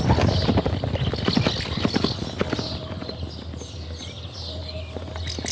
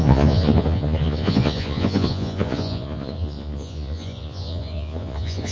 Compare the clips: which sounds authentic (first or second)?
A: first